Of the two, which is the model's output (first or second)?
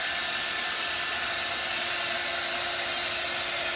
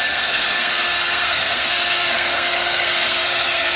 second